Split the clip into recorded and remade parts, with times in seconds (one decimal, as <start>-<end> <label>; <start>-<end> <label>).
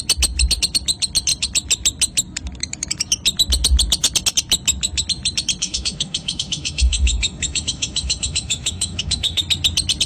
0.0-5.6 recorded; 5.6-9.4 remade; 9.4-10.1 recorded